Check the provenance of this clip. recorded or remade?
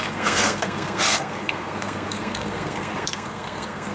remade